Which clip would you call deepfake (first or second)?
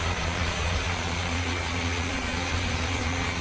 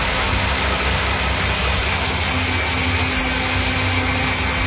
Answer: first